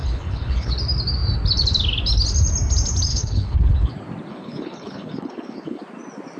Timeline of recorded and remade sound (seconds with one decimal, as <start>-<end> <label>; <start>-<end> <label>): 0.0-0.7 remade; 0.7-3.1 recorded; 3.1-3.9 remade; 3.9-4.3 recorded; 4.3-5.8 remade; 5.8-6.4 recorded